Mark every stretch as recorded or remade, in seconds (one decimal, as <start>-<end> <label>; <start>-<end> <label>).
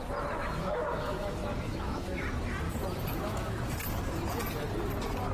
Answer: 0.0-0.4 recorded; 0.4-2.2 remade; 2.2-3.1 recorded; 3.1-3.7 remade; 3.7-5.3 recorded